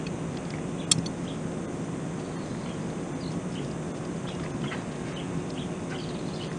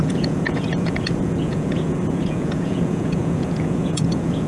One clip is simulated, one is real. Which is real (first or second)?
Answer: first